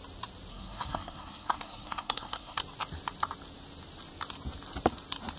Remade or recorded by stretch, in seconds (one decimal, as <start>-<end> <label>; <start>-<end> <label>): 0.0-0.5 recorded; 0.5-2.6 remade; 2.6-5.4 recorded